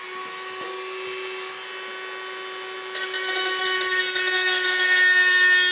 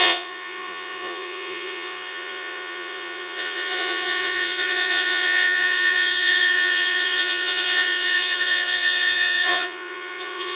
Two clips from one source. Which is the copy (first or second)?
second